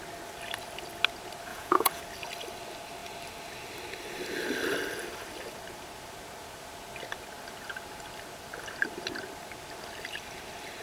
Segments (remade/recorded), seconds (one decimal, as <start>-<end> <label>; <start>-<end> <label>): 0.0-1.5 recorded; 1.5-2.0 remade; 2.0-10.8 recorded